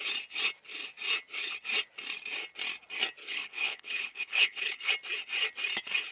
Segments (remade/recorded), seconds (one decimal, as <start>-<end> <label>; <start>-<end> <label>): 0.0-3.2 recorded; 3.2-4.9 remade; 4.9-6.1 recorded